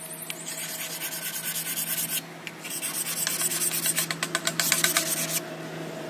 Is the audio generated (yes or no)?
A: no